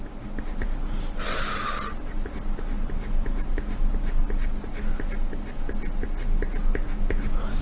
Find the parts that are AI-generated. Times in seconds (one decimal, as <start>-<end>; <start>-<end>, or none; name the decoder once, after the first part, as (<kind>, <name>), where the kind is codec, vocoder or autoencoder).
none